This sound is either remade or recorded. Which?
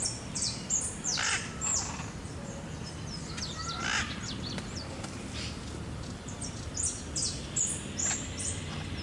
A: remade